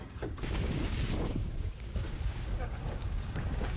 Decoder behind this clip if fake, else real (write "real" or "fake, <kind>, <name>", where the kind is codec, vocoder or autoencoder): fake, codec, DAC